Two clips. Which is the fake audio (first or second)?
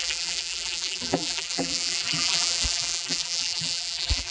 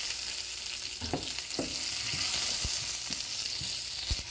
first